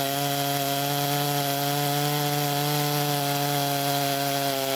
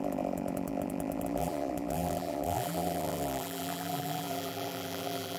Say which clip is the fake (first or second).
second